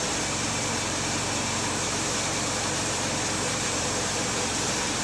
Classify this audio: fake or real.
fake